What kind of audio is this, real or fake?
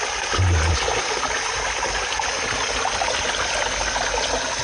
real